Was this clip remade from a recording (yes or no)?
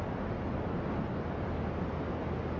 no